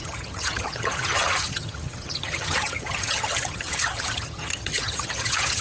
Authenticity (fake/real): fake